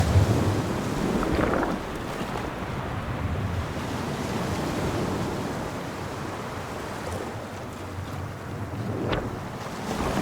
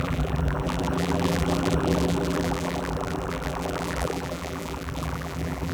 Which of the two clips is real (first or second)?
first